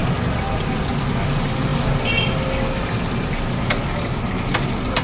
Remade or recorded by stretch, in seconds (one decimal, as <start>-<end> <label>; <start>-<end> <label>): 0.0-5.0 recorded